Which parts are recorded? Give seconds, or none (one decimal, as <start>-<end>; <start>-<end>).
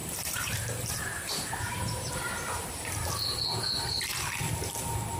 3.1-5.2